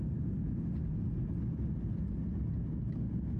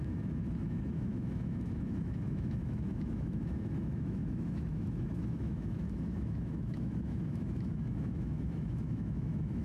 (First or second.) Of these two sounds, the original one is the first